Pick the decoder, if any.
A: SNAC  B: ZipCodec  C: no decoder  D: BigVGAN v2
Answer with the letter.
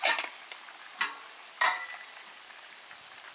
D